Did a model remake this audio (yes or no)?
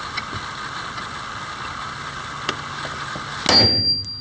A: no